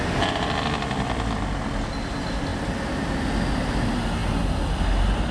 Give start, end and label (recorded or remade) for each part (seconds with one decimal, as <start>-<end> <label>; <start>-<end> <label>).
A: 0.0-5.3 recorded